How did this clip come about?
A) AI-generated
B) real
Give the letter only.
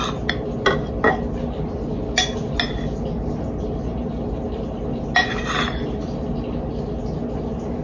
B